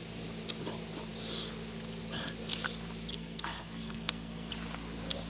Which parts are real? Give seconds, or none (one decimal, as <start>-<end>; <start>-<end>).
0.0-3.1; 4.5-5.3

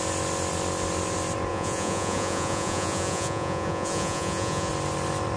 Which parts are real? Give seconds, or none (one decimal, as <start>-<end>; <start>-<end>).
0.0-1.5; 4.7-5.4

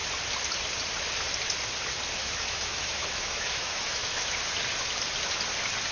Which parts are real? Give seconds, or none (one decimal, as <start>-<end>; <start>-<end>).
0.0-2.2; 4.3-5.9

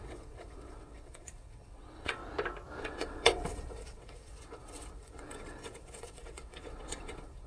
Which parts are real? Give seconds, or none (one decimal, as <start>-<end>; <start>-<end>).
2.2-2.8

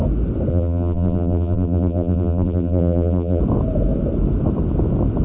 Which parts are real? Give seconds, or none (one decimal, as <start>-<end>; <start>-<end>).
0.0-0.5; 3.4-5.2

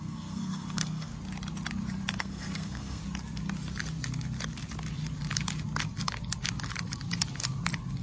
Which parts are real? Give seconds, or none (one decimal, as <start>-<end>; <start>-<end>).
1.1-2.2; 3.0-8.0

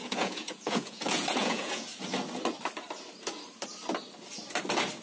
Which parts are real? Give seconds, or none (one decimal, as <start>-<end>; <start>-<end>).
1.9-5.0

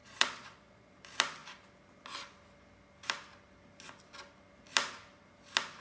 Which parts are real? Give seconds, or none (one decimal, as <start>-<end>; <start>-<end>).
0.9-5.8